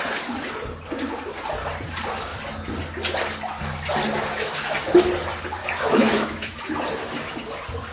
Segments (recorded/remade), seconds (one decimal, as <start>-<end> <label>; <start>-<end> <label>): 0.0-5.6 recorded; 5.6-6.6 remade; 6.6-7.9 recorded